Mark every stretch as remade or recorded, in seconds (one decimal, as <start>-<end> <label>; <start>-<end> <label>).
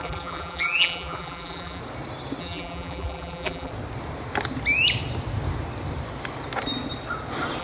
0.0-1.8 remade; 1.8-2.4 recorded; 2.4-3.7 remade; 3.7-7.6 recorded